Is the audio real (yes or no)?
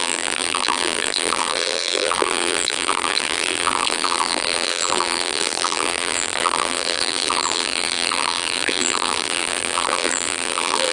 no